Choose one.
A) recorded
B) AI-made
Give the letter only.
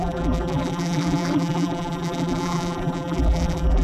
B